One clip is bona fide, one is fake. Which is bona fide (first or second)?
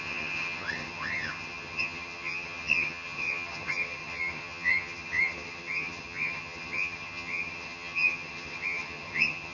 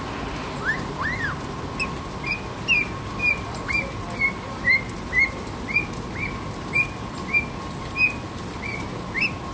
second